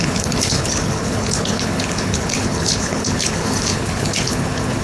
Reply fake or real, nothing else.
fake